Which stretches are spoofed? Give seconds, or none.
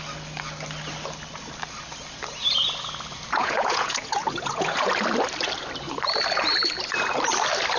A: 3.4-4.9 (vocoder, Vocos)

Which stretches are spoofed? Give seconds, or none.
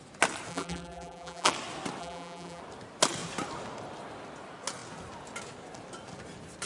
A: 0.5-1.5 (vocoder, BigVGAN v2); 2.0-2.6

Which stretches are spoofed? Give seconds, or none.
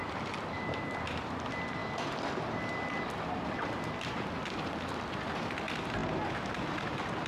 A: 0.0-0.8 (vocoder, BigVGAN v2)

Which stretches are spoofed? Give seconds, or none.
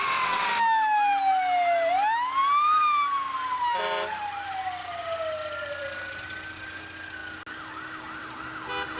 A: 0.0-0.5 (vocoder, WaveNeXt)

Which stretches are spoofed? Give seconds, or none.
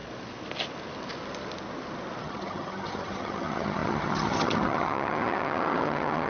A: 2.2-6.3 (vocoder, HiFi-GAN)